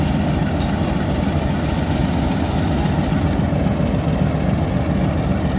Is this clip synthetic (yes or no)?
no